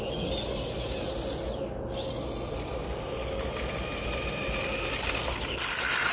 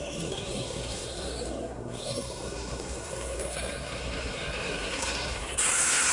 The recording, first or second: first